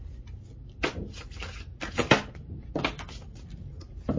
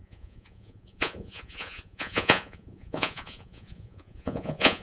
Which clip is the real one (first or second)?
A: first